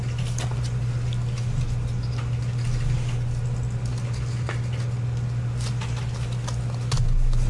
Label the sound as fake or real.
real